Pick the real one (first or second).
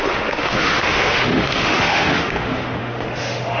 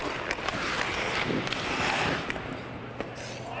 second